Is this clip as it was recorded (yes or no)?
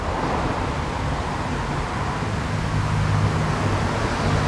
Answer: yes